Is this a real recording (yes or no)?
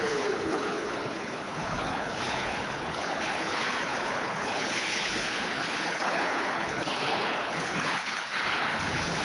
no